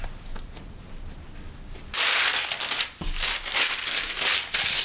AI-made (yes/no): no